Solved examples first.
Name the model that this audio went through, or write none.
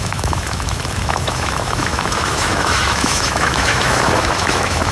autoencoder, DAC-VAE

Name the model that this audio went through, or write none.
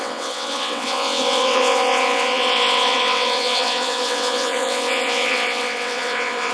vocoder, WaveNeXt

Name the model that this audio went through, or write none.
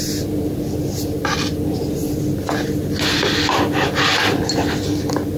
none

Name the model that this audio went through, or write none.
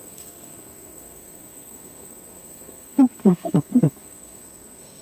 codec, SNAC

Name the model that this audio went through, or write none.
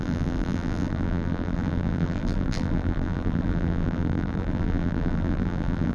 vocoder, BigVGAN v2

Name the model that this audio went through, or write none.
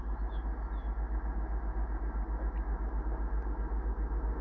none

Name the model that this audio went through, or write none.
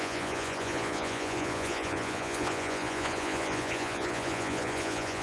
vocoder, Vocos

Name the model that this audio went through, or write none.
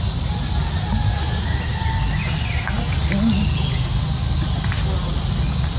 none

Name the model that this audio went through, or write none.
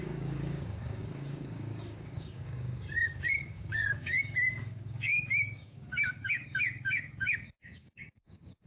codec, DAC